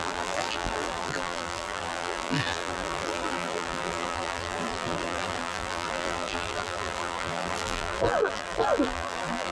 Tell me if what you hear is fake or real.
fake